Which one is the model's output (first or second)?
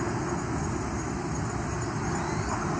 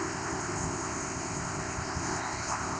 second